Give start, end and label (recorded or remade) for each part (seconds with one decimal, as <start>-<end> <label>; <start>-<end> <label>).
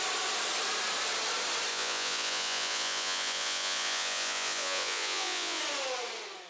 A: 0.0-1.7 recorded; 1.7-5.6 remade; 5.6-6.5 recorded